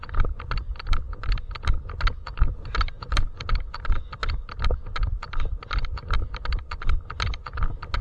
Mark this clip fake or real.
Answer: real